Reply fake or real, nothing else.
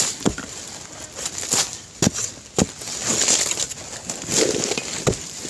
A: real